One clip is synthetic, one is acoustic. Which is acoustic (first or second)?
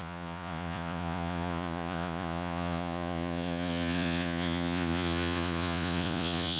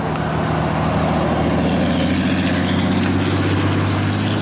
second